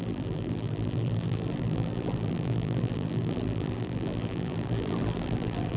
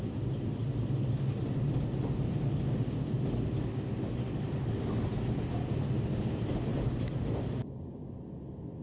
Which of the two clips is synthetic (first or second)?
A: first